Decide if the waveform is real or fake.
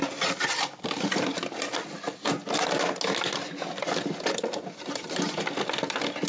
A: real